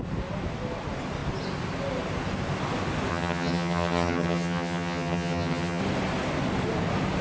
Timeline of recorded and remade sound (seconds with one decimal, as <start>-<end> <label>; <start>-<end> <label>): 0.0-3.1 recorded; 3.1-5.8 remade; 5.8-7.2 recorded